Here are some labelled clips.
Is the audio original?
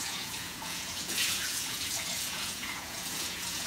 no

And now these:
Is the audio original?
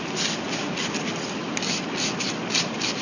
yes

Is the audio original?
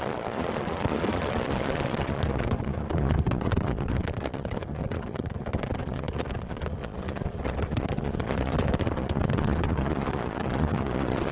no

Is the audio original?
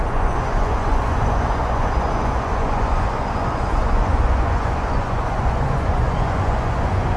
no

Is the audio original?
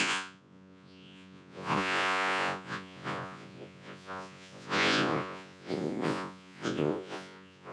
no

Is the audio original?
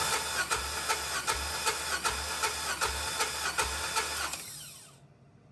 yes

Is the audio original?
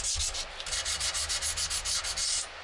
yes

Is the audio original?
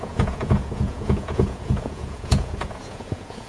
no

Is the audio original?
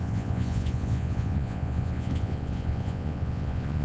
no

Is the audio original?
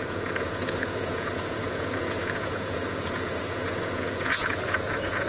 no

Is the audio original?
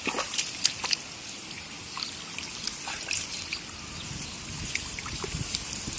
yes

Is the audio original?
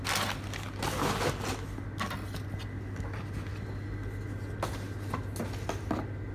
yes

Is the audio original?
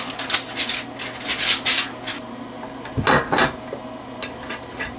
yes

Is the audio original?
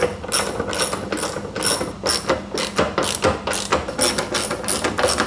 yes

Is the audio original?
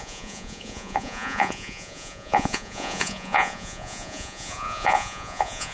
no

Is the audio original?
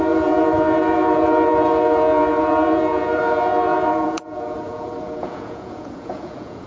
no